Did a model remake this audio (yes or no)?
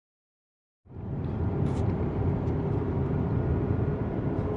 yes